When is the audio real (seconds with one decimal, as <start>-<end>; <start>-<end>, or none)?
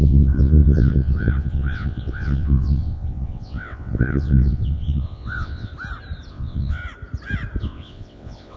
5.7-6.3; 6.8-7.6